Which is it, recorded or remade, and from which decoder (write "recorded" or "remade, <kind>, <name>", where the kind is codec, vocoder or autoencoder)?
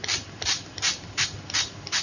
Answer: recorded